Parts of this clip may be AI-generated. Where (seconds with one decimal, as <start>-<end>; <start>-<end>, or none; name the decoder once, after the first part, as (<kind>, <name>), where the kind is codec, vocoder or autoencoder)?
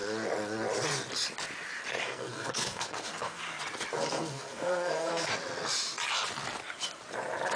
1.9-3.4 (codec, SNAC); 3.9-5.3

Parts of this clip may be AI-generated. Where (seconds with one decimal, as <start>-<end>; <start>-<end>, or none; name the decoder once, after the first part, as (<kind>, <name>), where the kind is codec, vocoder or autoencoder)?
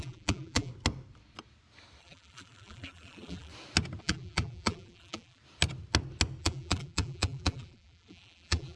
0.0-0.7 (vocoder, BigVGAN v2); 2.0-3.5; 4.0-5.4; 6.4-8.8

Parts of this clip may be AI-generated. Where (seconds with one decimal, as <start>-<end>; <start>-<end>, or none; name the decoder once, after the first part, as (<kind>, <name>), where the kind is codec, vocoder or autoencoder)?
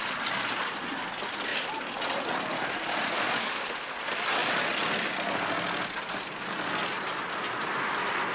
none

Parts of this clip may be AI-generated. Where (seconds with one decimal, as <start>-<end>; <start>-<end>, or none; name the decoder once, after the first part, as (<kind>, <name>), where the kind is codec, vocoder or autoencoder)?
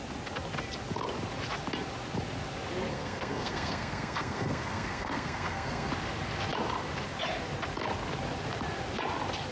2.9-5.9 (codec, SNAC)